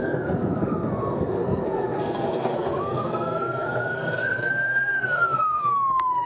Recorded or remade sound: remade